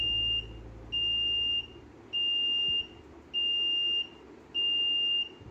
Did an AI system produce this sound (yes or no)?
no